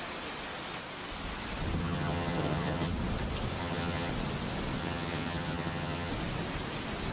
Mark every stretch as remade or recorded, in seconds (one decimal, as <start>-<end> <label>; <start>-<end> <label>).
0.0-1.8 recorded; 1.8-2.9 remade; 2.9-3.6 recorded; 3.6-4.1 remade; 4.1-4.8 recorded; 4.8-6.1 remade; 6.1-7.1 recorded